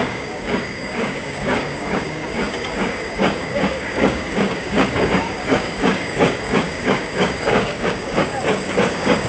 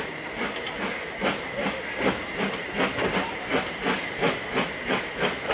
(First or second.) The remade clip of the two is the first